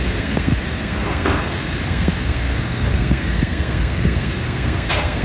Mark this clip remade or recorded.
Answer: remade